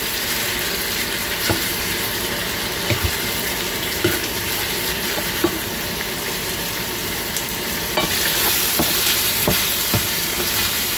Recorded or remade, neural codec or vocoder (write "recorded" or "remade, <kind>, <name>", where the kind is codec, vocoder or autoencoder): remade, vocoder, BigVGAN v2